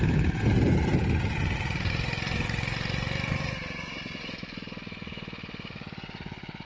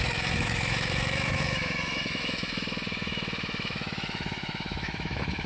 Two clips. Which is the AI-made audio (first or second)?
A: second